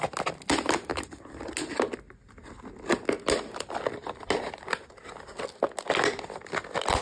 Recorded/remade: recorded